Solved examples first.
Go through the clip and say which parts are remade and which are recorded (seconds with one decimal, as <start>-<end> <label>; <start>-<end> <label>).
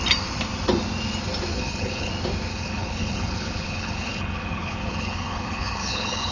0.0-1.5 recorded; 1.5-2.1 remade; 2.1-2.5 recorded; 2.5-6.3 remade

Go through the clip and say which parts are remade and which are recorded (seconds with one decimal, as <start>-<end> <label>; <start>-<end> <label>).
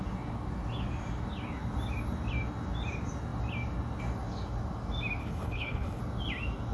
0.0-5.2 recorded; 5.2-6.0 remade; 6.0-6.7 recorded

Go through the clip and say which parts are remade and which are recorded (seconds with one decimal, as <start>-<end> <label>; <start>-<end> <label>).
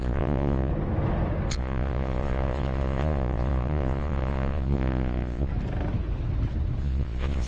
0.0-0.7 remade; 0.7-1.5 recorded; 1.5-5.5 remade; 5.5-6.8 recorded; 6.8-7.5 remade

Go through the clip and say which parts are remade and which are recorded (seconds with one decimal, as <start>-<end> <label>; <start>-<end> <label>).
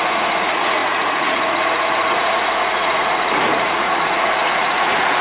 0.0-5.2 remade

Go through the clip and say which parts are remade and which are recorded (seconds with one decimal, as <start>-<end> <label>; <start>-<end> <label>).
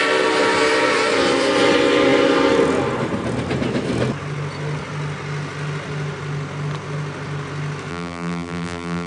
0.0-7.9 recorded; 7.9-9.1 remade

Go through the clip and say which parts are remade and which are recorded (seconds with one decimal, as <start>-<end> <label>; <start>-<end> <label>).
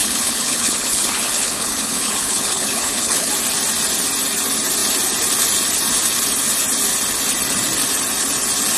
0.0-3.3 remade; 3.3-8.8 recorded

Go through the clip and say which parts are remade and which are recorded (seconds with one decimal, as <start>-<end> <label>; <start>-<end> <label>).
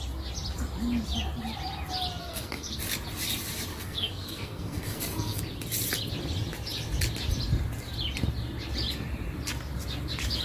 0.0-2.2 recorded; 2.2-2.8 remade; 2.8-3.7 recorded; 3.7-5.4 remade; 5.4-10.4 recorded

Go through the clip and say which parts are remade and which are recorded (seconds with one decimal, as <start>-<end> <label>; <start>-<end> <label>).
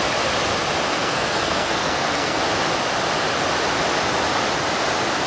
0.0-0.9 recorded; 0.9-2.4 remade; 2.4-5.3 recorded